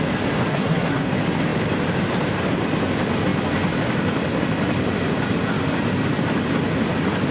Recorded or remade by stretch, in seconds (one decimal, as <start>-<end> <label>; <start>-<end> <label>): 0.0-0.5 recorded; 0.5-1.1 remade; 1.1-7.3 recorded

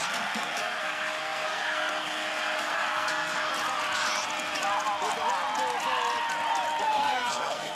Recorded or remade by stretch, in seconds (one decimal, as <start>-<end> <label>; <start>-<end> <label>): 0.0-3.5 remade; 3.5-6.8 recorded; 6.8-7.8 remade

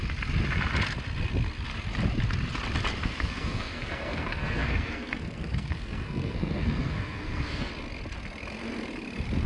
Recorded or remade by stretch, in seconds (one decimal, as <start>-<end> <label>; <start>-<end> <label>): 0.0-3.0 recorded; 3.0-7.7 remade; 7.7-9.5 recorded

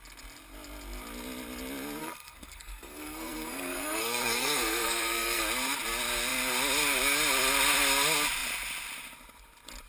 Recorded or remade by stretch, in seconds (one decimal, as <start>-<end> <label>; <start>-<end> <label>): 0.0-2.0 recorded; 2.0-5.4 remade; 5.4-9.9 recorded

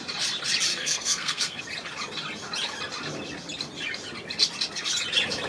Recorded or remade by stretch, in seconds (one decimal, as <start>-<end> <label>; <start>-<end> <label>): 0.0-0.7 recorded; 0.7-1.6 remade; 1.6-5.5 recorded

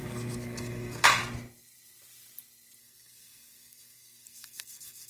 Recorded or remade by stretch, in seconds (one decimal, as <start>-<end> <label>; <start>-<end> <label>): 0.0-1.2 remade; 1.2-2.8 recorded; 2.8-5.1 remade

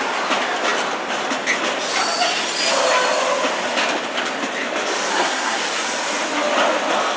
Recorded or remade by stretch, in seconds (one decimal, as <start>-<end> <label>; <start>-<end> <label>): 0.0-5.1 recorded; 5.1-5.6 remade; 5.6-7.2 recorded

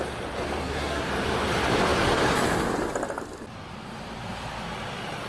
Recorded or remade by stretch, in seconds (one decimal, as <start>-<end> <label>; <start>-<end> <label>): 0.0-0.6 recorded; 0.6-1.1 remade; 1.1-5.3 recorded